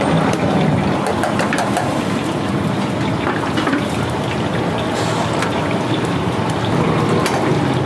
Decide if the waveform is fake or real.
fake